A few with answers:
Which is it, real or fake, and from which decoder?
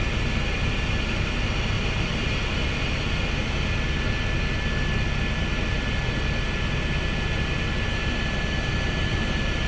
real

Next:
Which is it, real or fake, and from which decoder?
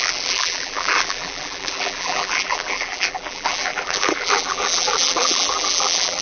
fake, vocoder, BigVGAN v2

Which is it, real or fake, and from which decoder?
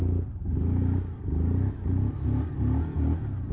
real